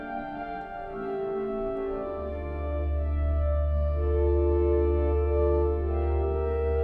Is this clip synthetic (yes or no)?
yes